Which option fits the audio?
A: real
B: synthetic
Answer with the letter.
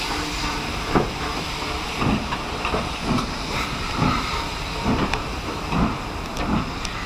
A